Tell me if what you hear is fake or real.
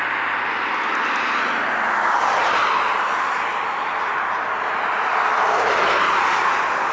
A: real